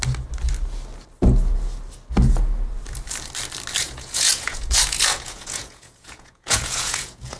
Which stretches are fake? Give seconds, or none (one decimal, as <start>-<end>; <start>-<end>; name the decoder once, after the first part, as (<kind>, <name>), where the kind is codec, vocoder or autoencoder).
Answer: 3.8-7.4 (vocoder, Vocos)